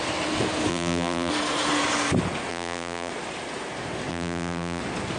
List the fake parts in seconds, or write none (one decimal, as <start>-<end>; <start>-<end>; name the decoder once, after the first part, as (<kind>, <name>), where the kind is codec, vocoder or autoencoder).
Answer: 0.7-1.3 (vocoder, BigVGAN v2); 2.5-3.1; 4.1-4.8